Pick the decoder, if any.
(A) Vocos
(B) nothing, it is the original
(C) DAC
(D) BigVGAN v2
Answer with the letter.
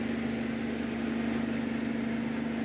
B